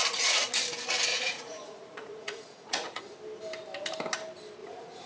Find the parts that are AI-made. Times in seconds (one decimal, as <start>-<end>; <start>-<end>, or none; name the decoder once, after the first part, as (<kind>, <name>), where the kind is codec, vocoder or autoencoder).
0.0-0.5 (vocoder, Vocos); 1.1-3.0; 4.6-5.1